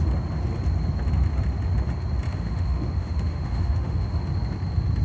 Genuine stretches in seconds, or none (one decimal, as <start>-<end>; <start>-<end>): 0.0-2.3; 4.3-5.0